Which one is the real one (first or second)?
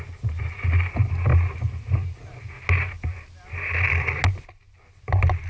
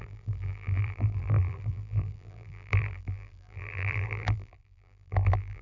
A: first